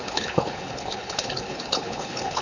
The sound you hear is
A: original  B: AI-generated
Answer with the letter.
B